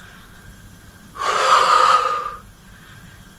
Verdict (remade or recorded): recorded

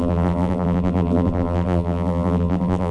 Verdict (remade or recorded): remade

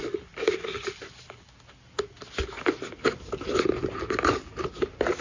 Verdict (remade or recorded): recorded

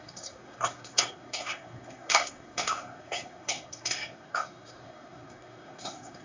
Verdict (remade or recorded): remade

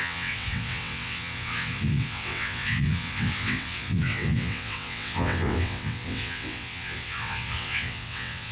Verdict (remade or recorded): remade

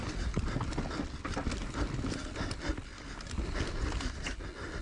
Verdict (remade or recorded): recorded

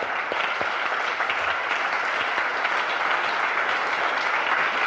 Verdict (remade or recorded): recorded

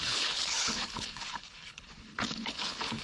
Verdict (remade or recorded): remade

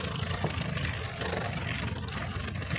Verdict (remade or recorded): recorded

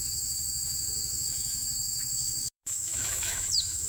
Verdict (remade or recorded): remade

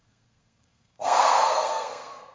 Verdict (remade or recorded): remade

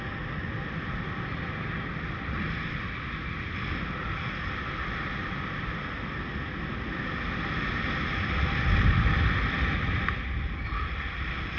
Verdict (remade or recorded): recorded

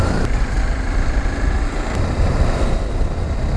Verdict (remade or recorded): recorded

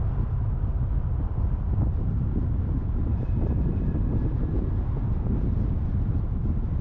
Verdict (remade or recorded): recorded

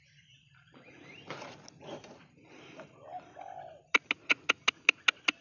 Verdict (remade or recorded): recorded